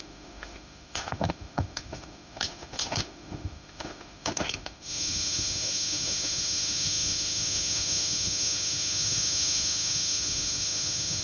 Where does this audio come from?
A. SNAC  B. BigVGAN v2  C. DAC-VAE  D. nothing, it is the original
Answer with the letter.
C